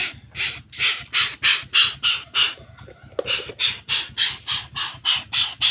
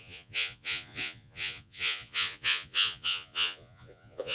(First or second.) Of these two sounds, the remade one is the second